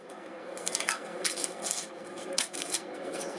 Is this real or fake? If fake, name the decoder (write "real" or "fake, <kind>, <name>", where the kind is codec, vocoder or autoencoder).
fake, codec, SNAC